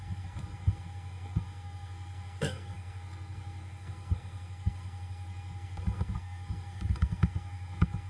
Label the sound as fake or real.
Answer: fake